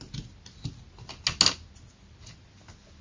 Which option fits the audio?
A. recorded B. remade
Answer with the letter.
A